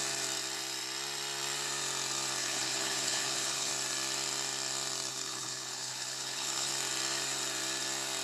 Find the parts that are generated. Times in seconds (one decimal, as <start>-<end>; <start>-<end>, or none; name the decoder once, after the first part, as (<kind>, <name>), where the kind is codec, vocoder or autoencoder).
2.4-3.7 (codec, HILCodec); 5.1-6.7